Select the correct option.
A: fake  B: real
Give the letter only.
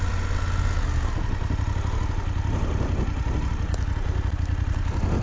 B